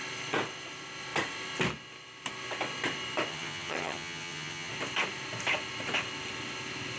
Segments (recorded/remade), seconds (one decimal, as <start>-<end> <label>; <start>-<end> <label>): 0.0-3.3 recorded; 3.3-4.7 remade; 4.7-7.0 recorded